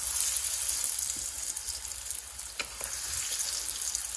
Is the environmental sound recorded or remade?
recorded